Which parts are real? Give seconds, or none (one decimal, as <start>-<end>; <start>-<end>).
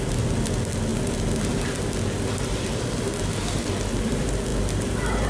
0.0-5.3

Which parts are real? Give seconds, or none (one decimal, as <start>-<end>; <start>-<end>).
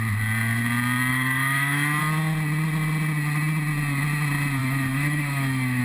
0.0-1.1; 2.0-4.6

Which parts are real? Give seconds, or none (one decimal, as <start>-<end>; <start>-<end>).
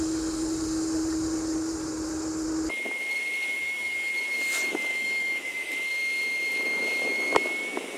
0.0-3.5; 4.1-4.9; 5.7-8.0